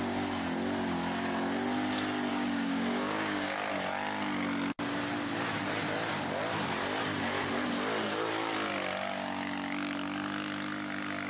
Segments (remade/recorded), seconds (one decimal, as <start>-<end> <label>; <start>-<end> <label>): 0.0-2.3 recorded; 2.3-3.7 remade; 3.7-11.3 recorded